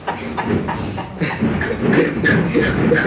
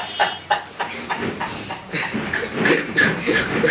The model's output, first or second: second